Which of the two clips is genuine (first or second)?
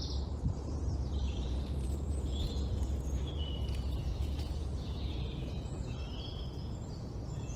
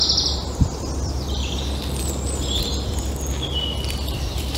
second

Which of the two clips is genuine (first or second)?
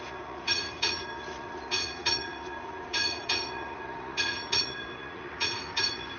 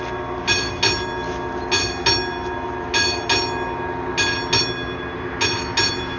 second